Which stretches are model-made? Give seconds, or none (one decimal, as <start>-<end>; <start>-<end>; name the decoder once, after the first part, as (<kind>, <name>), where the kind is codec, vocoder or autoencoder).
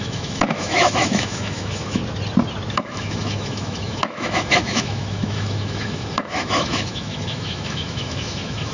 0.0-2.0 (autoencoder, DAC-VAE); 2.7-8.7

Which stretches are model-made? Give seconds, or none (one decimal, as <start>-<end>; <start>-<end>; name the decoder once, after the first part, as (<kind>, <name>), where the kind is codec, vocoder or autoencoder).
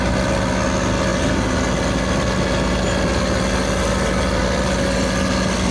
none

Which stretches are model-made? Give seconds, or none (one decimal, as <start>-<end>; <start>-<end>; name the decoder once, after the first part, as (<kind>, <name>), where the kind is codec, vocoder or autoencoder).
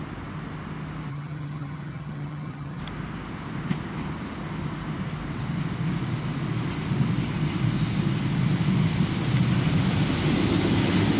1.1-2.8 (vocoder, HiFi-GAN)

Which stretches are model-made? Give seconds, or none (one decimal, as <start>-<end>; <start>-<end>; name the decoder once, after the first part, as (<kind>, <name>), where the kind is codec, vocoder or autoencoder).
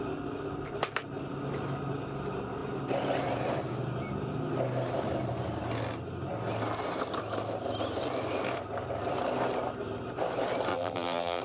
10.7-11.4 (vocoder, BigVGAN v2)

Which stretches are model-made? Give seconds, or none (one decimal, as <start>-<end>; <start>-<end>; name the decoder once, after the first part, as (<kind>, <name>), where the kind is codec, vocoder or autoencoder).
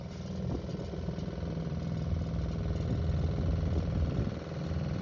none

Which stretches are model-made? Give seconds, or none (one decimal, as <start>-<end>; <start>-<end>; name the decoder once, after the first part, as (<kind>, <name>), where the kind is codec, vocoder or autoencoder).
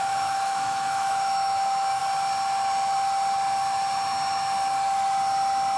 0.0-2.0 (autoencoder, DAC-VAE)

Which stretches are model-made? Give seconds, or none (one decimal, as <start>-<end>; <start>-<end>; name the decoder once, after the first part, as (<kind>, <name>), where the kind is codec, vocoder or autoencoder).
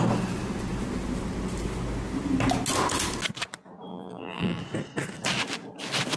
3.9-4.6 (vocoder, BigVGAN v2)